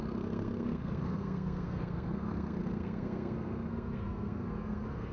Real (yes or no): no